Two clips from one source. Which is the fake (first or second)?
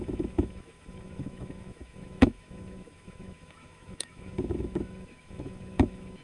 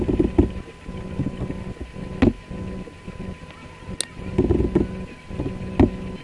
first